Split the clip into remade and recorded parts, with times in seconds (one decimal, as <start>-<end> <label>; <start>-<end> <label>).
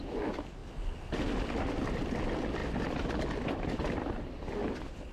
0.0-5.1 recorded